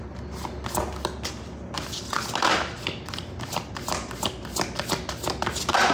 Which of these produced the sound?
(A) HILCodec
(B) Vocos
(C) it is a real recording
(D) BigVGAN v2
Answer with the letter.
C